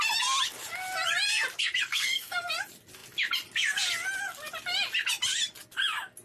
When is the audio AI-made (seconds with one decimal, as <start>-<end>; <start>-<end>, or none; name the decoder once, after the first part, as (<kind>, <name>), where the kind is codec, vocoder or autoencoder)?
1.9-2.5 (codec, SNAC)